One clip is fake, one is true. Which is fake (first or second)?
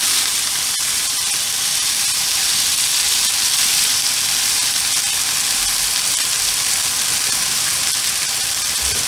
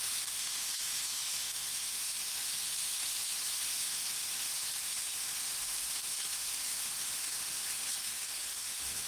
second